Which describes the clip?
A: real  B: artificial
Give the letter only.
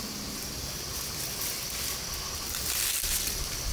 A